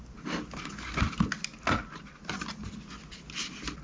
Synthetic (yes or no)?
no